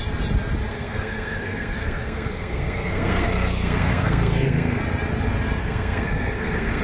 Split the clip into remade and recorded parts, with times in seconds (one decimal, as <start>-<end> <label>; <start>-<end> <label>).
0.0-0.7 recorded; 0.7-4.8 remade; 4.8-5.6 recorded; 5.6-6.8 remade